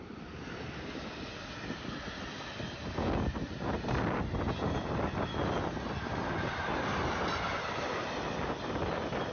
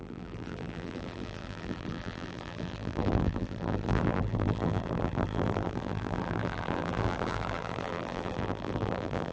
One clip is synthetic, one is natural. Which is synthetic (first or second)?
second